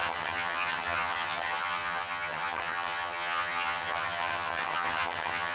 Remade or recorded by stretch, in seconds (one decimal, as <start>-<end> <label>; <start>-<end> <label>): 0.0-5.5 remade